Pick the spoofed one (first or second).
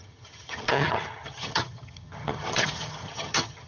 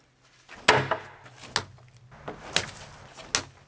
first